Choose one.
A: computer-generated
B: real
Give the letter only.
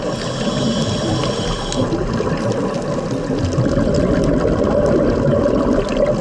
B